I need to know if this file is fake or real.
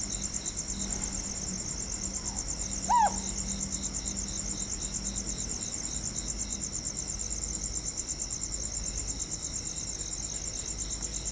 real